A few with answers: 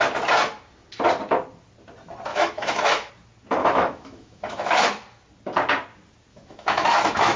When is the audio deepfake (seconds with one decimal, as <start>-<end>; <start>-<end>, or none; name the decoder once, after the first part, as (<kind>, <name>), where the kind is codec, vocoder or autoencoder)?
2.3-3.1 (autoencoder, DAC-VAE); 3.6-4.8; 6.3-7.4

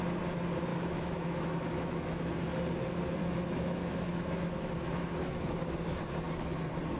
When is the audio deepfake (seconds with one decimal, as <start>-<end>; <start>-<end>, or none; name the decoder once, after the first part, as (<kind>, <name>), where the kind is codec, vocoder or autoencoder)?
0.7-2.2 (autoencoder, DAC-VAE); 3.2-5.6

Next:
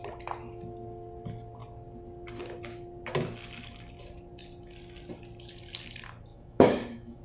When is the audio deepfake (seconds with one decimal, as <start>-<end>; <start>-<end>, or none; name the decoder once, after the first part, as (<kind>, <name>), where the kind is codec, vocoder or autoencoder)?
6.3-7.2 (autoencoder, DAC-VAE)